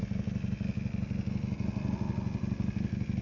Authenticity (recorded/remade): recorded